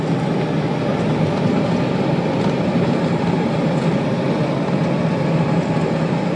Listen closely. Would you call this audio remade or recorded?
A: recorded